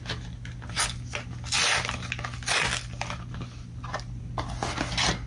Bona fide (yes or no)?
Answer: yes